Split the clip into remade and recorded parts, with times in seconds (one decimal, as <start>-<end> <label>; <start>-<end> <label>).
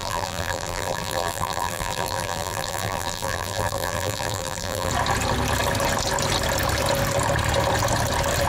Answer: 0.0-4.9 remade; 4.9-8.5 recorded